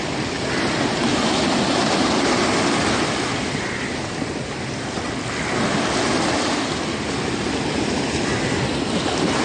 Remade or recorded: recorded